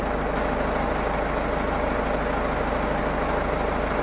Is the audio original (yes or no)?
yes